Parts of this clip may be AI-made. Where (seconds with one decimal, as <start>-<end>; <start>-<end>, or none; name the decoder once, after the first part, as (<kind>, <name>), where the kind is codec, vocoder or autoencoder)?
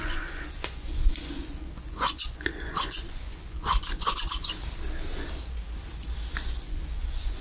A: 0.0-4.6 (vocoder, Vocos); 6.3-7.4